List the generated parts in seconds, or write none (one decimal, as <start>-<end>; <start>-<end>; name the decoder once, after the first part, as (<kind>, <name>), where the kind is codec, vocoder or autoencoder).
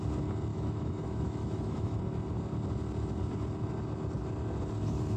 0.5-2.0 (autoencoder, DAC-VAE)